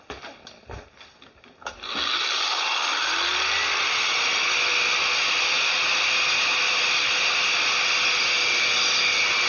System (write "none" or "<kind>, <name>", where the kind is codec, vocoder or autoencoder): none